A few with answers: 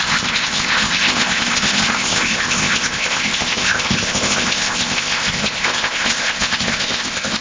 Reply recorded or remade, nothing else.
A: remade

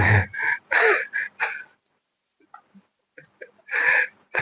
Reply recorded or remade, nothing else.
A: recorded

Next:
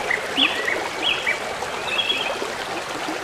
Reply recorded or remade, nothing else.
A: recorded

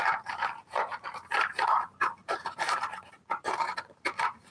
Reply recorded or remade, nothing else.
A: remade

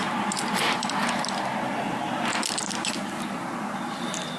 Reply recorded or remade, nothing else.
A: recorded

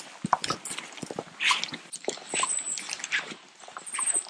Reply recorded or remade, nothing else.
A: recorded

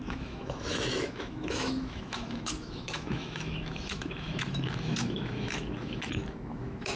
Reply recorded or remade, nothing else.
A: remade